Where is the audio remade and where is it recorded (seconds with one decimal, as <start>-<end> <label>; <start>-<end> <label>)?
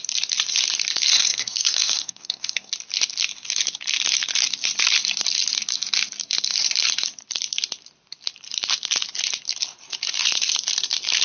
0.0-1.1 recorded; 1.1-2.7 remade; 2.7-11.2 recorded